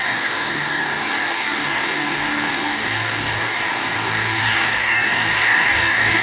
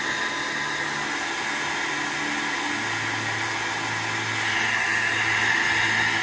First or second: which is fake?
first